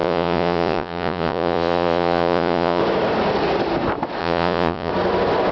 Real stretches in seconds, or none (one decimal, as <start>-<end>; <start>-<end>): 2.8-4.2; 4.9-5.5